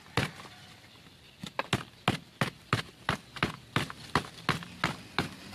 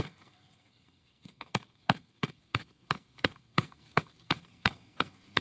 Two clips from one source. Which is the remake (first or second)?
second